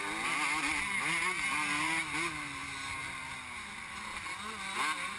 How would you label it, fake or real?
real